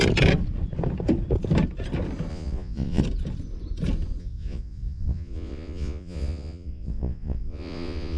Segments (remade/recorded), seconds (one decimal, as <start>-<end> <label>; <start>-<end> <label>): 0.0-2.3 recorded; 2.3-3.0 remade; 3.0-4.2 recorded; 4.2-8.2 remade